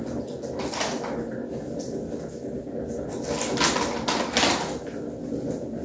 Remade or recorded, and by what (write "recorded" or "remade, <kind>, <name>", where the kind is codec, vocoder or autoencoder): recorded